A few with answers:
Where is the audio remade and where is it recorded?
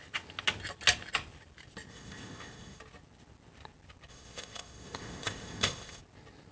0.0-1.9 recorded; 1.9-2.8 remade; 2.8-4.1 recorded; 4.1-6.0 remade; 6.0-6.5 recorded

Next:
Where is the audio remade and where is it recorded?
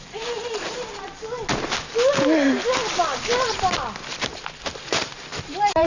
0.0-1.4 remade; 1.4-4.9 recorded; 4.9-5.9 remade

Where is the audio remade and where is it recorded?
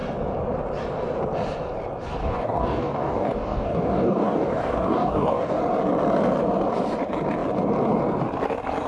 0.0-2.2 recorded; 2.2-5.6 remade; 5.6-8.9 recorded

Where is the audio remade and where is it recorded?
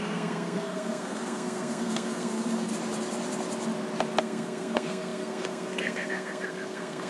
0.0-2.7 remade; 2.7-4.2 recorded; 4.2-7.1 remade